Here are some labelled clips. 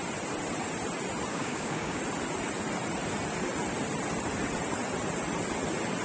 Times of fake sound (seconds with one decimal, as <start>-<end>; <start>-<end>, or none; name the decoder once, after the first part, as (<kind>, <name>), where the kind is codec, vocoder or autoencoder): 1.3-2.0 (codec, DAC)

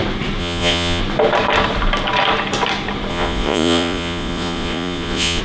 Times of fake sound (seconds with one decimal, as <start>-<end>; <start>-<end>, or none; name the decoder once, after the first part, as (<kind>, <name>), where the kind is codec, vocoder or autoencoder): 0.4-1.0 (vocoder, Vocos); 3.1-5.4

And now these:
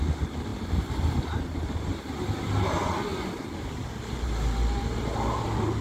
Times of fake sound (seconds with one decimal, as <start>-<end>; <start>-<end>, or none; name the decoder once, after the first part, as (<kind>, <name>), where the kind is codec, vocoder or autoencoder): none

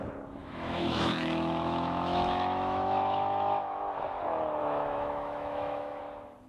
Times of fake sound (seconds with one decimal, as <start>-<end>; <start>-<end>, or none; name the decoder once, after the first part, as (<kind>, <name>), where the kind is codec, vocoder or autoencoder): 0.4-3.8 (autoencoder, DAC-VAE); 4.6-6.0

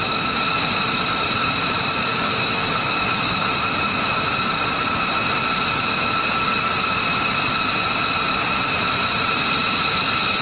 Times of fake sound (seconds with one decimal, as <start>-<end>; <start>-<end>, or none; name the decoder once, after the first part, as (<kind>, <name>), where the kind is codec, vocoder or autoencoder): 2.1-3.5 (autoencoder, DAC-VAE)

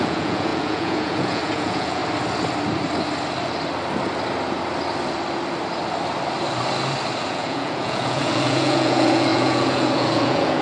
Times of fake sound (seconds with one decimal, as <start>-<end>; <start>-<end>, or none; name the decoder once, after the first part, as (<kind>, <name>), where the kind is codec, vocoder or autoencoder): 0.0-2.0 (vocoder, Vocos); 7.3-10.6